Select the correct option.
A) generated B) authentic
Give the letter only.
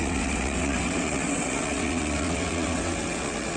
A